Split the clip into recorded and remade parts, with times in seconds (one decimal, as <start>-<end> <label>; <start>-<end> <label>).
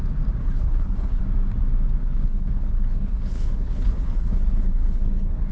0.0-0.4 recorded; 0.4-1.2 remade; 1.2-2.0 recorded; 2.0-5.5 remade